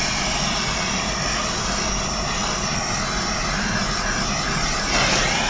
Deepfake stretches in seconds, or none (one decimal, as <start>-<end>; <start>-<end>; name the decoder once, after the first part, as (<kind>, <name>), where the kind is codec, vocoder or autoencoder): none